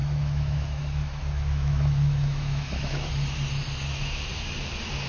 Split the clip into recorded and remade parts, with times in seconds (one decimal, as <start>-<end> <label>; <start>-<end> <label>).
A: 0.0-3.1 remade; 3.1-5.1 recorded